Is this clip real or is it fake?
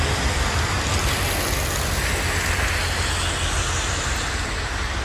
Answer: real